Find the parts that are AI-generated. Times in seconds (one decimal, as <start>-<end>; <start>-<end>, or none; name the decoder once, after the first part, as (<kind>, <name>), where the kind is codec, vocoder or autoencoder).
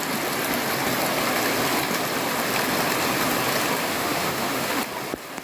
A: 3.8-4.8 (autoencoder, DAC-VAE)